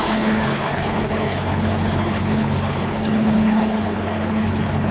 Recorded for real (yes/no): no